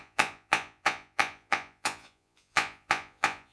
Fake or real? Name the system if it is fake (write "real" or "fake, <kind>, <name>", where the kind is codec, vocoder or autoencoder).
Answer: fake, vocoder, Vocos